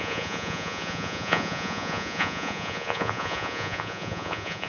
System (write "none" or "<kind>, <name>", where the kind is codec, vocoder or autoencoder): vocoder, Vocos